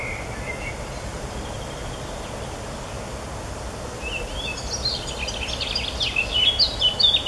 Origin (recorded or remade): recorded